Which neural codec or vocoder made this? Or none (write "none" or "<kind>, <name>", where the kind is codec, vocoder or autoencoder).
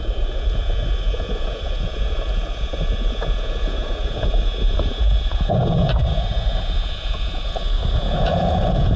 vocoder, Vocos